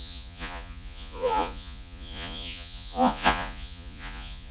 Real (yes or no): no